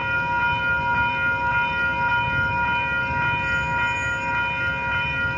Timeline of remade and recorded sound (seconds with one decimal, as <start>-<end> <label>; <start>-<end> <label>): 0.0-5.4 recorded

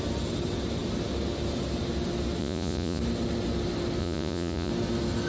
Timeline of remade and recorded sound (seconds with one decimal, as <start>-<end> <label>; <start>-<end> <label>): 0.0-2.4 recorded; 2.4-3.0 remade; 3.0-4.0 recorded; 4.0-4.7 remade; 4.7-5.3 recorded

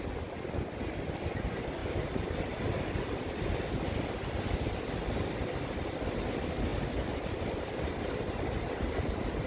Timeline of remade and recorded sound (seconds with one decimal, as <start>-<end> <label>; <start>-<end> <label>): 0.0-9.5 recorded

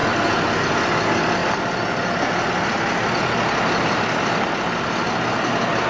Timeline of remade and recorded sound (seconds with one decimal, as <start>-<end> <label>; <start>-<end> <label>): 0.0-5.9 recorded

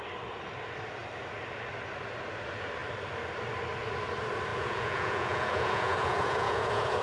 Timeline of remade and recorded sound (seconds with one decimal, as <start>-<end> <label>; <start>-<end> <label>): 0.0-4.5 recorded; 4.5-7.0 remade

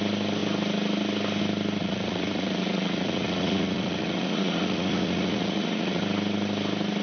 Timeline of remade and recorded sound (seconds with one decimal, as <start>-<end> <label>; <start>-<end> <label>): 0.0-1.8 recorded; 1.8-6.0 remade; 6.0-7.0 recorded

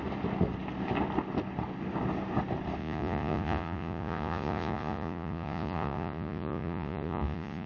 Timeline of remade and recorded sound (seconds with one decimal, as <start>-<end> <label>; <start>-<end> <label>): 0.0-2.8 recorded; 2.8-7.7 remade